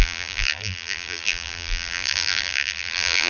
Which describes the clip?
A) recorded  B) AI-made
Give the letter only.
B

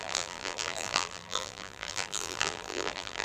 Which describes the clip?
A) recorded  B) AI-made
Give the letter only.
B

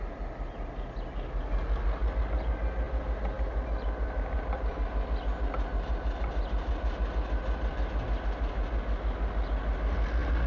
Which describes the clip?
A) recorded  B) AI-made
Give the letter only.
A